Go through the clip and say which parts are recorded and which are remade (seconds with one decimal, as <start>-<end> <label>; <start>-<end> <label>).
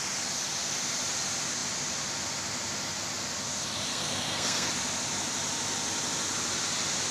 0.0-3.9 recorded; 3.9-4.7 remade; 4.7-7.1 recorded